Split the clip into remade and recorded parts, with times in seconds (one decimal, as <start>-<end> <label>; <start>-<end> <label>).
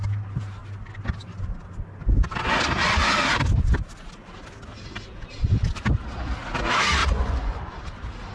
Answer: 0.0-7.0 recorded; 7.0-7.7 remade; 7.7-8.3 recorded